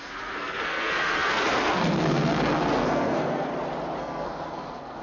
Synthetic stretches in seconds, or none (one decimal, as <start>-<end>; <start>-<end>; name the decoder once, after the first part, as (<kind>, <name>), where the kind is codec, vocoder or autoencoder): 0.0-3.5 (codec, SNAC); 4.0-5.0